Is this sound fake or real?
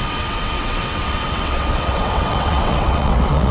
fake